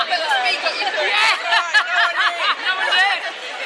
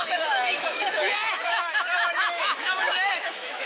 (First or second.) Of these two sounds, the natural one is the first